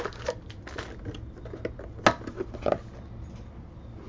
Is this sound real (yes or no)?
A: yes